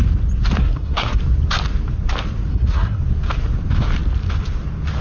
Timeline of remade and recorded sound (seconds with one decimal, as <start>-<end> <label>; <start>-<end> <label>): 0.0-0.6 recorded; 0.6-1.2 remade; 1.2-2.5 recorded; 2.5-3.0 remade; 3.0-5.0 recorded